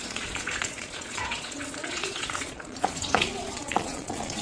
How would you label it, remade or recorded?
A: remade